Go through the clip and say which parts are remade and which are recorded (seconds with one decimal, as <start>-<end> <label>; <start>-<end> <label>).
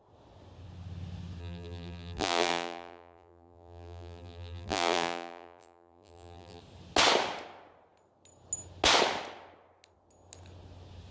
0.0-1.4 recorded; 1.4-6.6 remade; 6.6-11.1 recorded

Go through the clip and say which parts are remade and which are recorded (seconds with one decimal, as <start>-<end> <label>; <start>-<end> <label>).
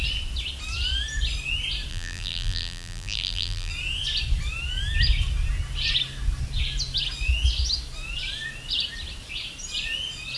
0.0-1.9 recorded; 1.9-3.7 remade; 3.7-10.4 recorded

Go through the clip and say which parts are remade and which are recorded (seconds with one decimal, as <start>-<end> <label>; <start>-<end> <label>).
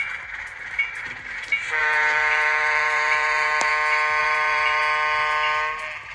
0.0-1.8 recorded; 1.8-3.7 remade; 3.7-4.2 recorded; 4.2-4.8 remade; 4.8-6.1 recorded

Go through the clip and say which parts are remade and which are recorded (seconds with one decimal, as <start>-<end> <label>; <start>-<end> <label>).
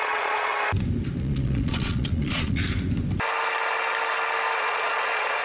0.0-0.5 remade; 0.5-1.2 recorded; 1.2-2.6 remade; 2.6-4.6 recorded; 4.6-5.4 remade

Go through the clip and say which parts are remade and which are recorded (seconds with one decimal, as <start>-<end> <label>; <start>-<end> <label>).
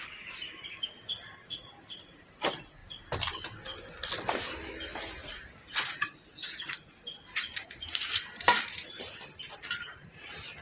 0.0-1.4 recorded; 1.4-2.3 remade; 2.3-5.2 recorded; 5.2-7.0 remade; 7.0-7.6 recorded; 7.6-8.1 remade; 8.1-10.6 recorded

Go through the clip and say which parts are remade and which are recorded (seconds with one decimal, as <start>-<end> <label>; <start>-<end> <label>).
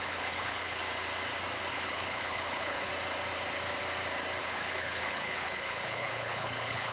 0.0-0.8 remade; 0.8-1.7 recorded; 1.7-2.9 remade; 2.9-4.4 recorded; 4.4-6.9 remade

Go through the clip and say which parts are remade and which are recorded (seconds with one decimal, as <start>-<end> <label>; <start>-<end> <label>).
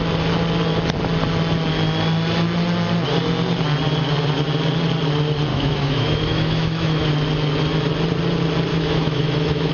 0.0-5.5 recorded; 5.5-7.1 remade; 7.1-8.7 recorded; 8.7-9.7 remade